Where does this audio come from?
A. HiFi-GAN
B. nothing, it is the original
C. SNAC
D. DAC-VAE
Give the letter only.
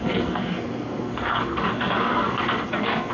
C